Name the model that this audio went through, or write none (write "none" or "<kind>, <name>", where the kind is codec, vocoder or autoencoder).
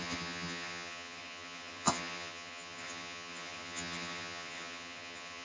vocoder, HiFi-GAN